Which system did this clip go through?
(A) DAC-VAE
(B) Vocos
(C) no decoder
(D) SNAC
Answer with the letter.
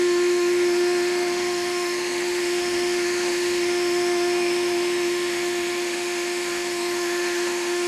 A